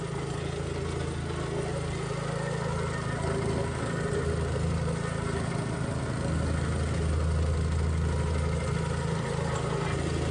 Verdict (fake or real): real